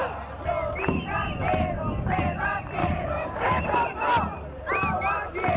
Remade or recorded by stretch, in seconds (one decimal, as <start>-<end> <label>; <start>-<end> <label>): 0.0-2.8 recorded; 2.8-3.6 remade; 3.6-5.6 recorded